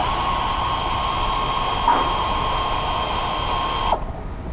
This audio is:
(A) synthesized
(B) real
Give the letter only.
B